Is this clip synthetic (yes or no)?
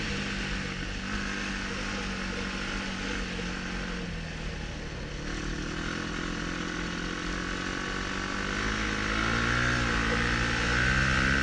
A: no